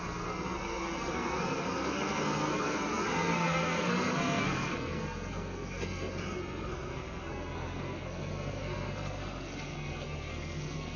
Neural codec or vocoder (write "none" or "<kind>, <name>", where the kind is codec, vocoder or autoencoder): codec, SNAC